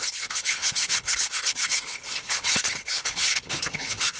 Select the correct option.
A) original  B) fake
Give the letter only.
B